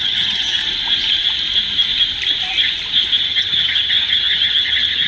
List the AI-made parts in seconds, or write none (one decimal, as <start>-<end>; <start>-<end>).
0.0-0.6; 3.2-5.1